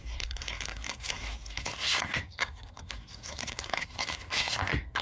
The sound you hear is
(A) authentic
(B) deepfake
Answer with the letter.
B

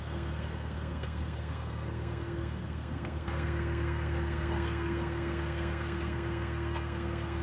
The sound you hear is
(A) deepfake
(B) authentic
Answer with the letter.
A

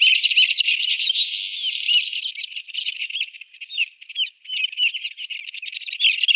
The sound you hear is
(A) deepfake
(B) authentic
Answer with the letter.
B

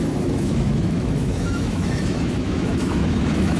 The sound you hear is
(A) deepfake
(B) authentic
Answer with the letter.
A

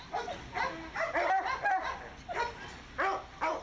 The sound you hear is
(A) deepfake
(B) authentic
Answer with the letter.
B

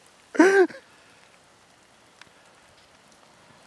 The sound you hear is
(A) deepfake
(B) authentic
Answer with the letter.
B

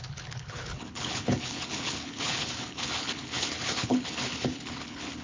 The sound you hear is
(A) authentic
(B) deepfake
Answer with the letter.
B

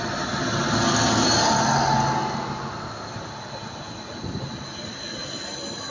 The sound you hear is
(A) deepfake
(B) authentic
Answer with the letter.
B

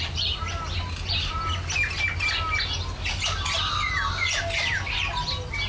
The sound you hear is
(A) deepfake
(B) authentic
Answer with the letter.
B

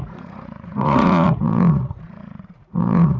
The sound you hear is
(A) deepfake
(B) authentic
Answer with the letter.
A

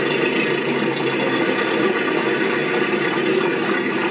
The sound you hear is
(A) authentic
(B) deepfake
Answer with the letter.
A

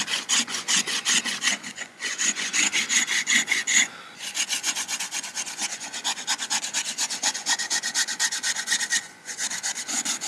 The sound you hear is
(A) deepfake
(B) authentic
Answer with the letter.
A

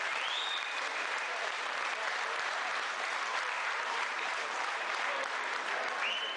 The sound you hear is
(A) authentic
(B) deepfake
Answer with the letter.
B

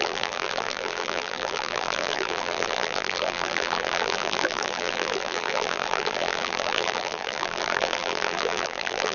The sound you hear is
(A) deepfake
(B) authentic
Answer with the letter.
A